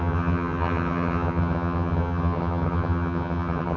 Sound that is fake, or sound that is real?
fake